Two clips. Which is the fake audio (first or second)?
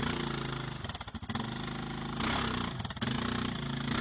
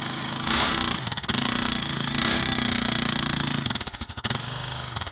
second